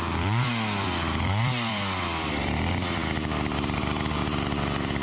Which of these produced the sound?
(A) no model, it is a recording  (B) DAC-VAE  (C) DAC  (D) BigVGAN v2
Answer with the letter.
D